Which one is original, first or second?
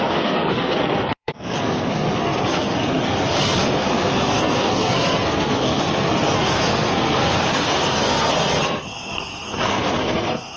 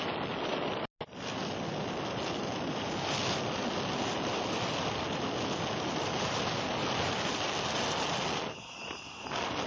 second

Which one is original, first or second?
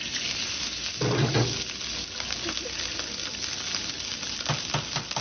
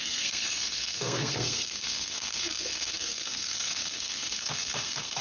first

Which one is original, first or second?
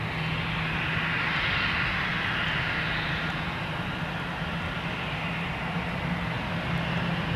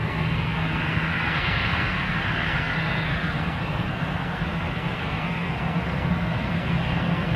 first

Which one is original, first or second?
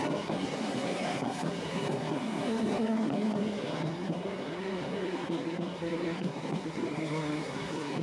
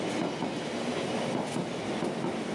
second